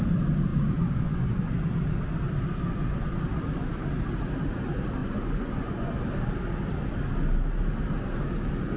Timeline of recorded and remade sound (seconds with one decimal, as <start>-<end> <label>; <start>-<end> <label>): 0.0-0.5 recorded; 0.5-1.5 remade; 1.5-5.0 recorded; 5.0-5.9 remade; 5.9-8.8 recorded